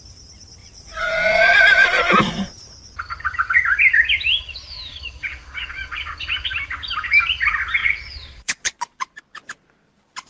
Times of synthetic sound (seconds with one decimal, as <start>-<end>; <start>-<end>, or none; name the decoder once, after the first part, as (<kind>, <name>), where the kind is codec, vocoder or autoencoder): 0.6-2.2 (vocoder, Vocos); 5.3-6.1; 7.8-9.2

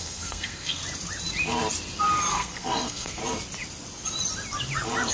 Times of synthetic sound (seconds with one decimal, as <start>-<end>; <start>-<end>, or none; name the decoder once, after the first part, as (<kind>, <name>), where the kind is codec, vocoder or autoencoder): 0.0-0.8 (codec, SNAC); 2.3-3.2

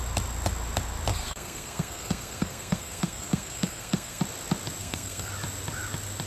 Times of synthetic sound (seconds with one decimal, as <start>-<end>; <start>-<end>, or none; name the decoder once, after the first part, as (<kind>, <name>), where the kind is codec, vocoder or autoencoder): 1.1-4.2 (codec, SNAC); 4.8-5.3

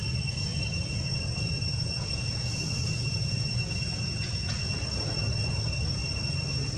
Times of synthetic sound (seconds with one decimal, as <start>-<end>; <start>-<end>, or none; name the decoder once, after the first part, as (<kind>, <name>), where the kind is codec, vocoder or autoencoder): 0.5-4.6 (vocoder, Vocos)

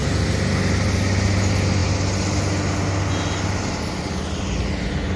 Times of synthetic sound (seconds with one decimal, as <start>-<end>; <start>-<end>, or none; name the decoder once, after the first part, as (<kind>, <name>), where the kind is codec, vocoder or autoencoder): none

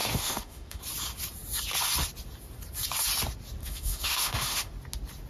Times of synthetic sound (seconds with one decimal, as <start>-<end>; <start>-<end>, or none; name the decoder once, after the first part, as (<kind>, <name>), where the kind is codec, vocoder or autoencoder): 0.0-0.8 (autoencoder, DAC-VAE); 3.6-4.7